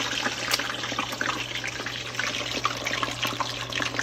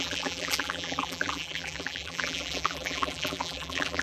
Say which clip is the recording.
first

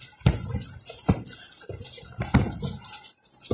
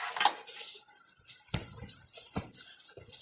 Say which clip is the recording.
first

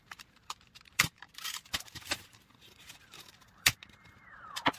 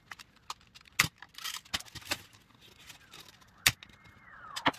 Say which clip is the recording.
second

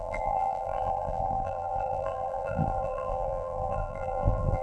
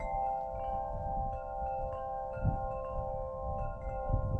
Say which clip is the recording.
second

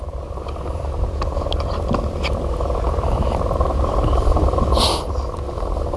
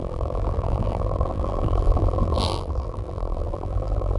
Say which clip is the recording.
first